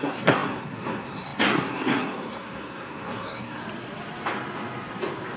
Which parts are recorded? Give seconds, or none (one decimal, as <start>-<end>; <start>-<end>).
3.6-5.4

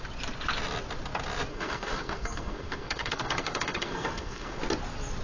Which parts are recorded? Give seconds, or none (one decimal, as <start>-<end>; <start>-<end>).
0.0-1.5; 4.6-5.2